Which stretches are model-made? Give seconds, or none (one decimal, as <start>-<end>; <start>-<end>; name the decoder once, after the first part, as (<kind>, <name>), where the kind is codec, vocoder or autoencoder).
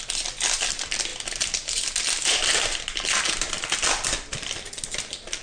none